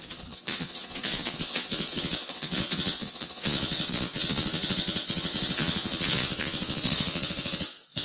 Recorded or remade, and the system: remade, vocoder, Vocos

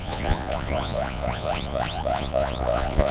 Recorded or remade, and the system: remade, vocoder, Vocos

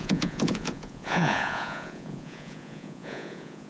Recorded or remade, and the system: remade, vocoder, Vocos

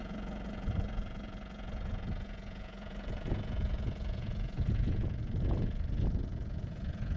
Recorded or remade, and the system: remade, vocoder, Vocos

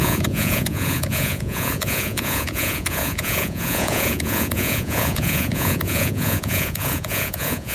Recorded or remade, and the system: remade, vocoder, Vocos